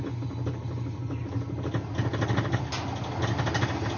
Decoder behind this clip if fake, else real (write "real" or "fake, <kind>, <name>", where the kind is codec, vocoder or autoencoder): real